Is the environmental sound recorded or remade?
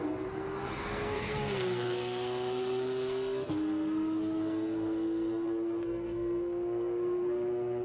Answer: remade